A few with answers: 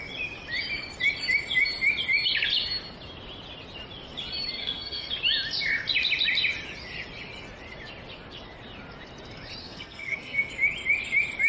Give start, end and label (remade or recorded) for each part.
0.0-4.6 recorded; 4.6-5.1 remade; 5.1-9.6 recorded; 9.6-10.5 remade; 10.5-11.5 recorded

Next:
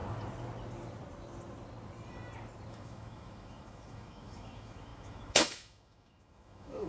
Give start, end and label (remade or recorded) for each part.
0.0-2.7 recorded; 2.7-6.9 remade

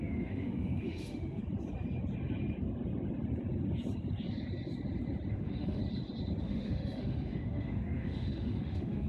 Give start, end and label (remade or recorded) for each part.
0.0-1.4 remade; 1.4-5.3 recorded; 5.3-5.8 remade; 5.8-6.4 recorded; 6.4-9.1 remade

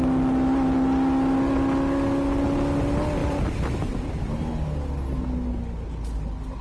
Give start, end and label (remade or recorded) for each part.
0.0-3.2 recorded; 3.2-4.3 remade; 4.3-6.6 recorded

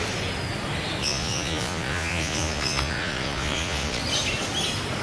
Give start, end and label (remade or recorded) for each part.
0.0-1.0 recorded; 1.0-4.0 remade; 4.0-5.0 recorded

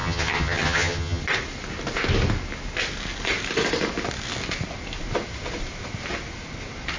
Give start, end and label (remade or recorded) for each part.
0.0-1.2 remade; 1.2-7.0 recorded

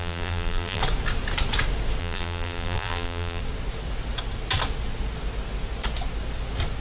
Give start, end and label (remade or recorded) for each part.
0.0-0.8 remade; 0.8-2.0 recorded; 2.0-3.4 remade; 3.4-6.8 recorded

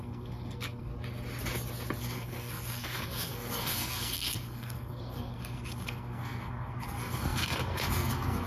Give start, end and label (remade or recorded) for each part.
0.0-0.9 remade; 0.9-2.0 recorded; 2.0-8.5 remade